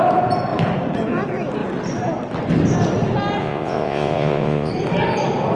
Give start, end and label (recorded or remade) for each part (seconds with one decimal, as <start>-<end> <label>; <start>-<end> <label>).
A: 0.0-3.4 recorded; 3.4-4.7 remade; 4.7-5.6 recorded